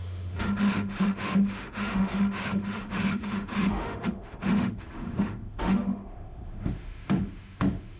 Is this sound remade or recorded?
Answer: remade